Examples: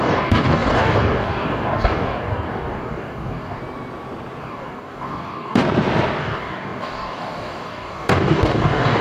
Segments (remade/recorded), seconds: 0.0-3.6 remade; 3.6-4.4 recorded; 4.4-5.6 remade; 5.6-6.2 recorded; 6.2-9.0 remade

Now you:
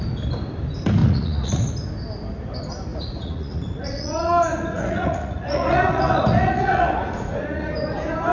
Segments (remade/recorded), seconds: 0.0-1.0 recorded; 1.0-1.7 remade; 1.7-2.9 recorded; 2.9-7.7 remade; 7.7-8.3 recorded

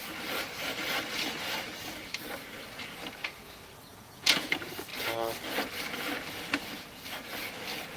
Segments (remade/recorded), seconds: 0.0-3.9 recorded; 3.9-4.5 remade; 4.5-8.0 recorded

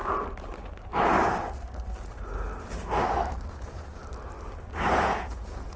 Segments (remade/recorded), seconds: 0.0-3.5 recorded; 3.5-4.0 remade; 4.0-4.9 recorded; 4.9-5.8 remade

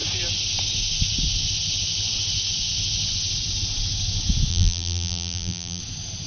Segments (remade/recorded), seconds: 0.0-4.5 recorded; 4.5-5.8 remade; 5.8-6.3 recorded

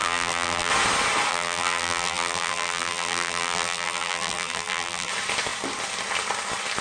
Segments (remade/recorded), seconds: 0.0-0.7 remade; 0.7-1.3 recorded; 1.3-5.1 remade; 5.1-6.8 recorded